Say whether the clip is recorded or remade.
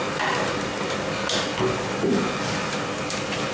recorded